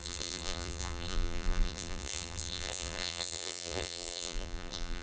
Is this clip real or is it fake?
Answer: fake